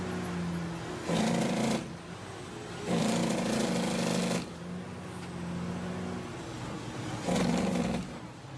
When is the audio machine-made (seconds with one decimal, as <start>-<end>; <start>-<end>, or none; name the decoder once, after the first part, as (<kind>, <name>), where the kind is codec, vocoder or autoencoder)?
none